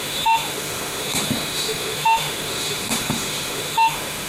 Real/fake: fake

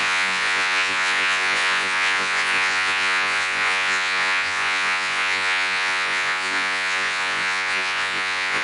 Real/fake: fake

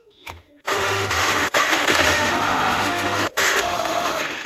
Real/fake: fake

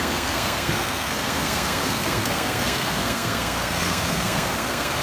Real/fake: fake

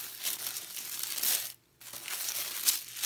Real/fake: real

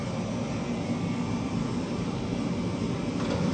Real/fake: real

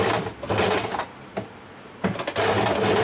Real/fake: real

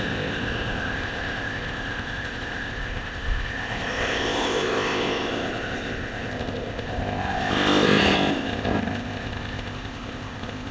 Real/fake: fake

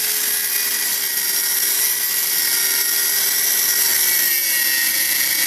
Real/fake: real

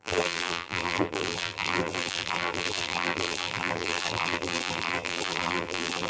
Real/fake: fake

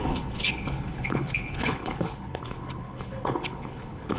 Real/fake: fake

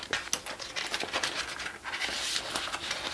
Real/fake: real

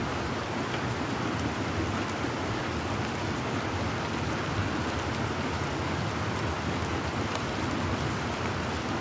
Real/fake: real